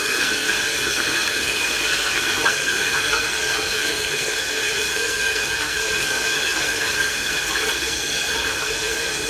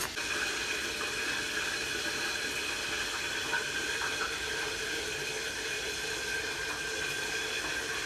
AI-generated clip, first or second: first